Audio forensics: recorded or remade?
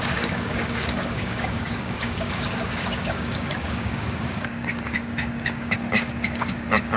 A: remade